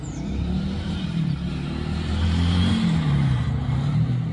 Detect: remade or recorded remade